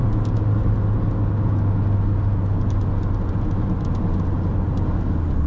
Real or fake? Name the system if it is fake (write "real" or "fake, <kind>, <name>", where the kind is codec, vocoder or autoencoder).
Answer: real